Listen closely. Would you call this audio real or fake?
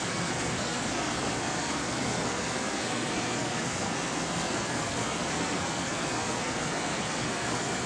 fake